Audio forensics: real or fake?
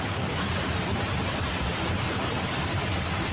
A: real